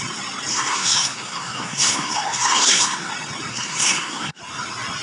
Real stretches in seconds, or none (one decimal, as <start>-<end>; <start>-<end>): 0.0-0.5; 3.1-3.5; 4.4-5.0